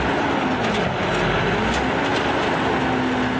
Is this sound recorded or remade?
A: recorded